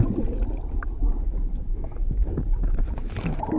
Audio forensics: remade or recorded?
recorded